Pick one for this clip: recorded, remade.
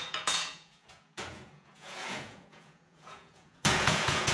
remade